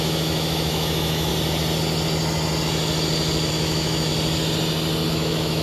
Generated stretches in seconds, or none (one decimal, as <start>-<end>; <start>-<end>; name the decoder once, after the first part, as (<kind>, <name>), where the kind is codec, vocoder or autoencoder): 0.0-1.3 (autoencoder, DAC-VAE); 3.5-4.1; 5.1-5.6